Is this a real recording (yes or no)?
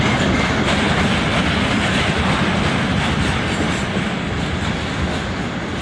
yes